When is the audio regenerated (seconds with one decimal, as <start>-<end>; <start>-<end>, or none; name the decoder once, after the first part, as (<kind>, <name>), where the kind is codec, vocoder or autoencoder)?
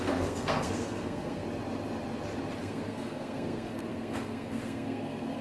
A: 0.0-1.4 (codec, SNAC); 2.6-5.4